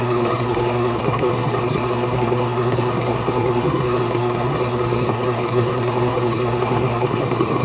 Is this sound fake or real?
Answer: fake